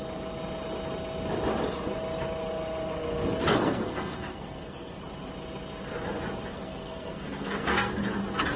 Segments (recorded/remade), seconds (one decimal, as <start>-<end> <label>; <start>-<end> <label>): 0.0-3.5 recorded; 3.5-5.0 remade; 5.0-6.5 recorded; 6.5-7.9 remade; 7.9-8.6 recorded